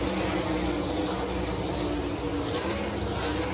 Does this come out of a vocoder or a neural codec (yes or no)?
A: no